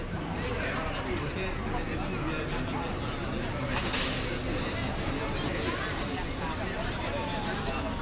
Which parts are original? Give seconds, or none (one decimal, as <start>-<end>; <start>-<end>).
0.0-4.5; 5.1-8.0